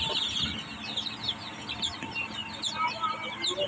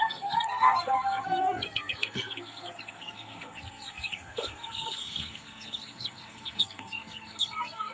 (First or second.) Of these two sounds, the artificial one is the second